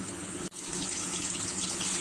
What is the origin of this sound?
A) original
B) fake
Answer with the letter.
B